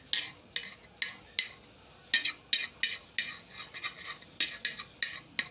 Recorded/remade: recorded